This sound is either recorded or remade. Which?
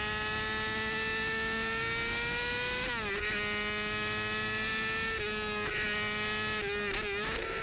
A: recorded